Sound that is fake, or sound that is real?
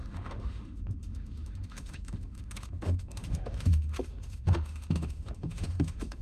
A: fake